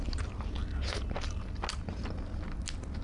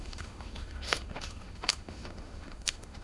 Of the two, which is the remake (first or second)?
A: second